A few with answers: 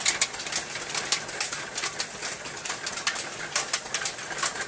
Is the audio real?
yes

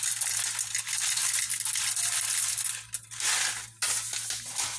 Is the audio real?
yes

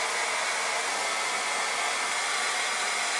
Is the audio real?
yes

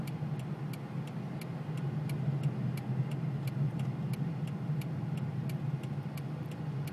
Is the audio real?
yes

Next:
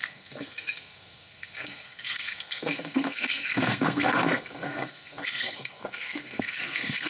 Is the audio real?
no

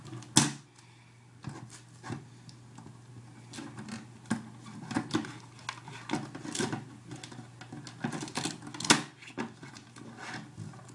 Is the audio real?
yes